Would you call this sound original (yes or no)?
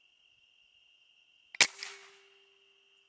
yes